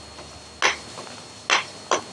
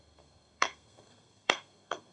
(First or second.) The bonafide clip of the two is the first